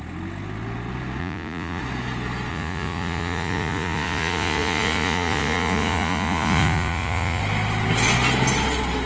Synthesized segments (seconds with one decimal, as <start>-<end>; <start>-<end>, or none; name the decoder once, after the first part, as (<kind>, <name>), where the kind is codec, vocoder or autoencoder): 1.2-1.8 (vocoder, Vocos); 2.5-7.4